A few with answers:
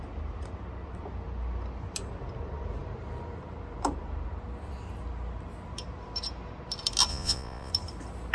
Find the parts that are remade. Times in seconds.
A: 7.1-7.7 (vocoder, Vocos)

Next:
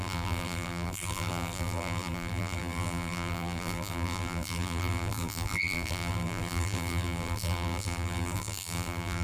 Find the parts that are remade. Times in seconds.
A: 0.0-9.2 (vocoder, BigVGAN v2)

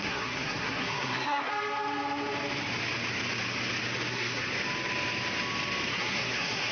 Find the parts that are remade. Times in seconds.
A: 0.0-1.5 (codec, SNAC); 4.1-4.5; 5.9-6.7

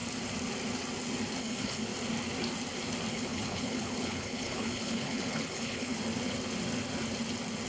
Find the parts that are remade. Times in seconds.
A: 1.4-1.9 (codec, HILCodec); 3.1-5.9